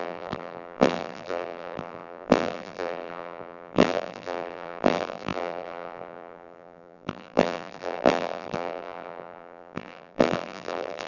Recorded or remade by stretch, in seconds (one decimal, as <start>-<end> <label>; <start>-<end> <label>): 0.0-11.1 remade